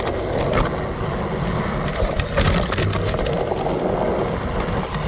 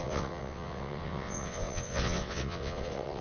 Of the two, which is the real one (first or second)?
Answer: first